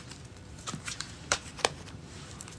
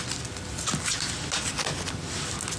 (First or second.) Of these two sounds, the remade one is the first